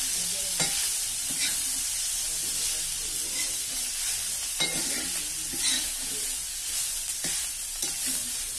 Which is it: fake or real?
real